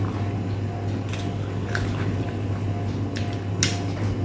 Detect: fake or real real